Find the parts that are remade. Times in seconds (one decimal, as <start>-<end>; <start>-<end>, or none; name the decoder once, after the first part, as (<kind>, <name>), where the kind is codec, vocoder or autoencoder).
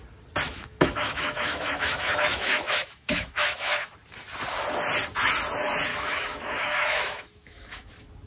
0.5-3.9 (autoencoder, DAC-VAE); 5.9-7.9